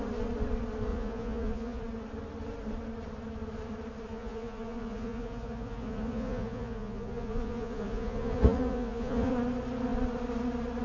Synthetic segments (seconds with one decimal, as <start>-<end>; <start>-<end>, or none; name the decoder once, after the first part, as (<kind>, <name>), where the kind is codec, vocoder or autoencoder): 0.9-1.8 (vocoder, Vocos); 4.1-9.3